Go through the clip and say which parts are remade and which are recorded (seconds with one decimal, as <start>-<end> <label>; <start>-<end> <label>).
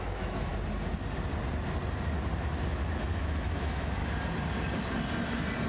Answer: 0.0-0.5 remade; 0.5-3.0 recorded; 3.0-4.0 remade; 4.0-5.7 recorded